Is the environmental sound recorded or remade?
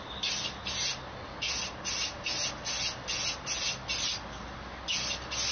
recorded